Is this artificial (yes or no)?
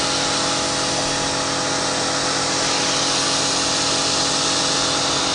no